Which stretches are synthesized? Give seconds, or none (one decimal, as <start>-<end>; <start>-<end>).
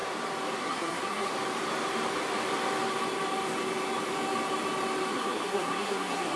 0.6-1.3; 5.1-6.4